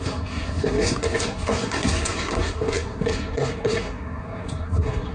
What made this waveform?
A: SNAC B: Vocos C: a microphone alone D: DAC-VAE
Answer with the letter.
A